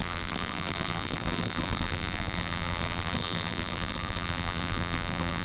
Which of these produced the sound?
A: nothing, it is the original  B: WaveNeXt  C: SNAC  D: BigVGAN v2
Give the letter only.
D